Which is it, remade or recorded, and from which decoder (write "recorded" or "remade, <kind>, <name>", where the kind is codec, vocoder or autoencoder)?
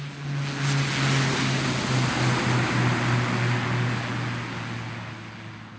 recorded